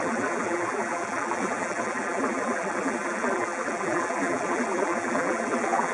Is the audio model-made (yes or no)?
yes